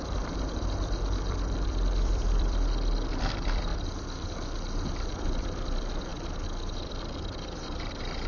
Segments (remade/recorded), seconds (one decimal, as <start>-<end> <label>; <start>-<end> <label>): 0.0-3.7 remade; 3.7-5.1 recorded; 5.1-8.3 remade